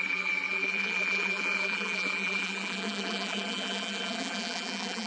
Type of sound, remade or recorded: remade